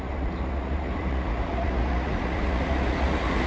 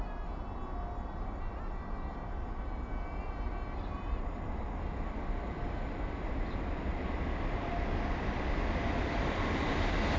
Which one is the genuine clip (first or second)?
second